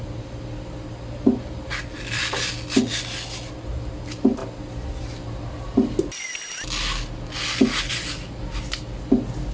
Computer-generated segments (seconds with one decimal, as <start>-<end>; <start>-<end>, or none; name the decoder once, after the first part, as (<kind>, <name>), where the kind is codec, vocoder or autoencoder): none